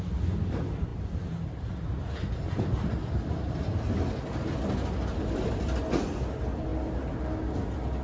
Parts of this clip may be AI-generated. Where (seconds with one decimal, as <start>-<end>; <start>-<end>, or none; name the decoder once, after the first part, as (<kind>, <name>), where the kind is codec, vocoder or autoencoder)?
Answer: none